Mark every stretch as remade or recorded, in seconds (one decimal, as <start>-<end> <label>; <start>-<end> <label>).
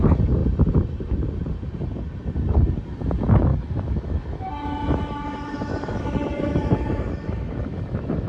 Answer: 0.0-3.5 recorded; 3.5-8.3 remade